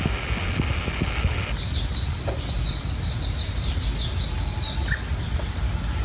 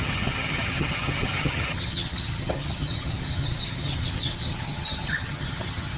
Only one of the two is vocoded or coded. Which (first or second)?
second